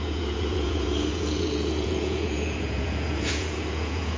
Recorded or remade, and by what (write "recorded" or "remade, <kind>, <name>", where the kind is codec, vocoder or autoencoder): remade, vocoder, Vocos